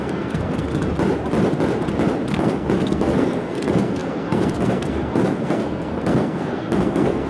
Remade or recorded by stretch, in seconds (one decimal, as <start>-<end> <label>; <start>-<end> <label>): 0.0-0.8 remade; 0.8-2.3 recorded; 2.3-7.3 remade